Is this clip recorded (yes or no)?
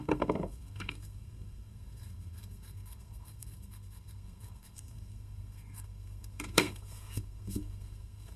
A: no